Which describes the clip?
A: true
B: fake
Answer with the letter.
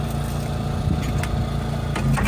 A